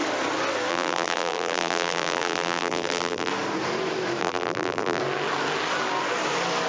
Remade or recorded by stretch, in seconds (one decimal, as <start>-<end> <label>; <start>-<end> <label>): 0.0-0.7 recorded; 0.7-3.3 remade; 3.3-4.2 recorded; 4.2-5.0 remade; 5.0-6.7 recorded